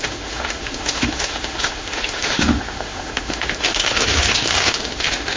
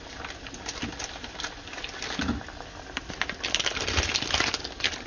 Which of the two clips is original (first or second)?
second